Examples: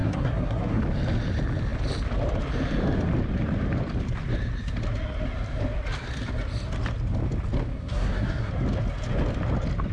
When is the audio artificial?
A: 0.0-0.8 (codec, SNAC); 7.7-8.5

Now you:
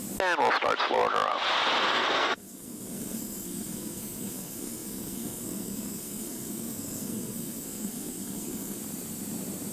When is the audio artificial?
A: 1.8-8.8 (codec, SNAC)

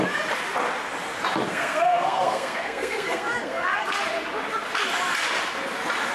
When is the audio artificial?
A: 1.5-4.0 (codec, SNAC)

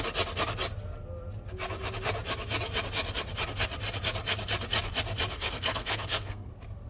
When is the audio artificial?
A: 5.3-6.5 (codec, SNAC)

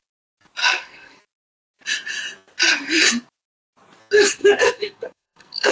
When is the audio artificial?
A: 0.6-1.2 (codec, SNAC); 4.4-5.7

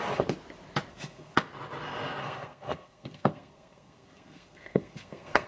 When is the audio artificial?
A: 0.9-1.5 (codec, SNAC); 2.2-5.5

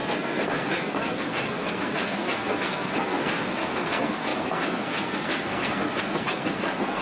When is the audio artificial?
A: 0.0-7.0 (codec, SNAC)

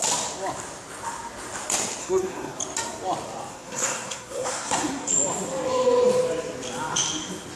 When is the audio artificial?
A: 2.0-2.6 (codec, SNAC); 3.5-5.1